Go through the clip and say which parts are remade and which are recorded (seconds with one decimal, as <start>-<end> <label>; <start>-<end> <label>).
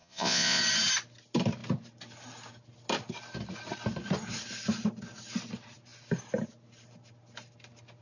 0.0-0.6 remade; 0.6-8.0 recorded